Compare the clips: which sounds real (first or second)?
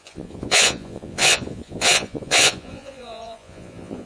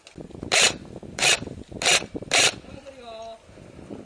second